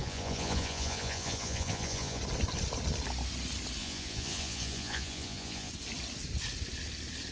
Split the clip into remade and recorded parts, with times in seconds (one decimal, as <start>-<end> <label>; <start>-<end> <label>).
0.0-2.2 remade; 2.2-3.8 recorded; 3.8-5.7 remade; 5.7-7.3 recorded